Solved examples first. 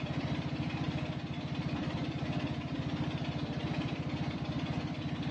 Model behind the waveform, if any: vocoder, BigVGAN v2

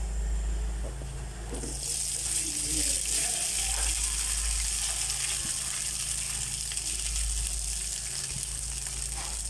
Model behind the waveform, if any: none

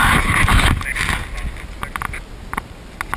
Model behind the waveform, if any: none